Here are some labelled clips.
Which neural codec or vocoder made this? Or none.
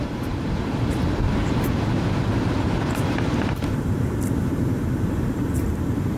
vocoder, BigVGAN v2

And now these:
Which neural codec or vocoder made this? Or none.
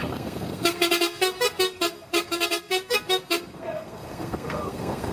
codec, SNAC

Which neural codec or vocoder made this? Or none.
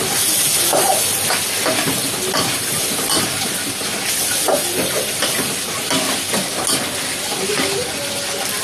none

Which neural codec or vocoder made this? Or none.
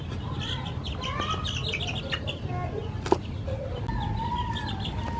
none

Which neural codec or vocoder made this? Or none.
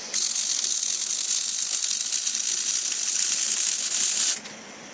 none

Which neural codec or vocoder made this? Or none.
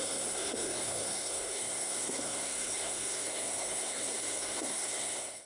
codec, SNAC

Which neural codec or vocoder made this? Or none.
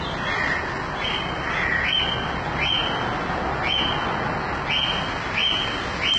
none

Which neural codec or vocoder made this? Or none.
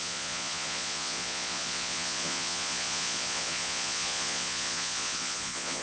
vocoder, Vocos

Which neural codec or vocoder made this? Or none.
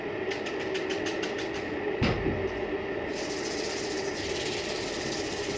none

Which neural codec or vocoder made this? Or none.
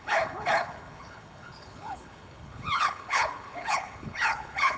codec, HILCodec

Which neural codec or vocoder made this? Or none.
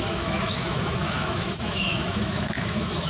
autoencoder, DAC-VAE